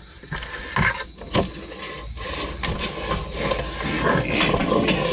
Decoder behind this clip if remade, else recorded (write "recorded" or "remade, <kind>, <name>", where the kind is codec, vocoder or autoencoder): recorded